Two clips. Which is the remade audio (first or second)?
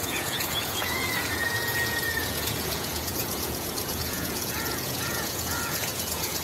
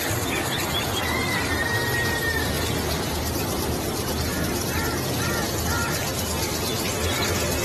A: first